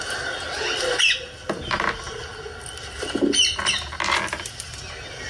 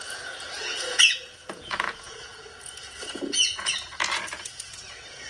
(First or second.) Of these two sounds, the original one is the first